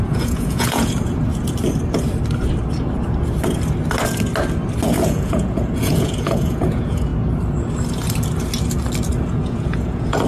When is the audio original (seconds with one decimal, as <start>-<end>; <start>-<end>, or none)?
1.3-4.9; 7.1-9.2